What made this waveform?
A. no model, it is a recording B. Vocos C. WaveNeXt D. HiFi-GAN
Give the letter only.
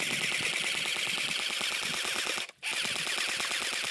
A